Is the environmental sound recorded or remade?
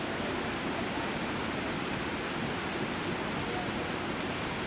recorded